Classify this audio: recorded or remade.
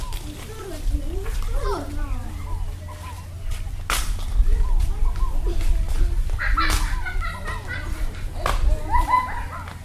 recorded